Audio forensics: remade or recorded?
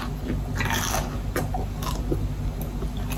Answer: recorded